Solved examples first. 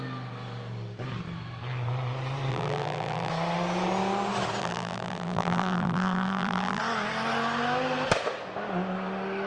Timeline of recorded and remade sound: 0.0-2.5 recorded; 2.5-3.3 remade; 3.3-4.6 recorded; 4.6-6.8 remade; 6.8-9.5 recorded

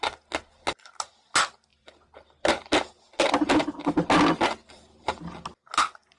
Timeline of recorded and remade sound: 0.0-1.7 recorded; 1.7-3.5 remade; 3.5-4.6 recorded; 4.6-5.2 remade; 5.2-6.2 recorded

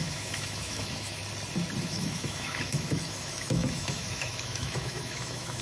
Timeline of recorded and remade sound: 0.0-1.2 remade; 1.2-1.8 recorded; 1.8-5.6 remade

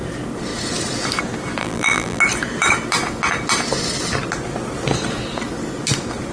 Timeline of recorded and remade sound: 0.0-1.6 recorded; 1.6-2.2 remade; 2.2-6.3 recorded